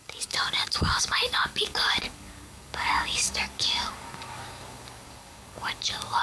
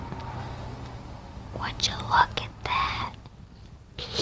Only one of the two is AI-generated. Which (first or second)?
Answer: first